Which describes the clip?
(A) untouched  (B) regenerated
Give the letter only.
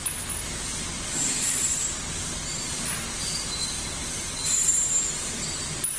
A